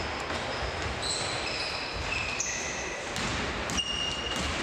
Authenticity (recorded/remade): recorded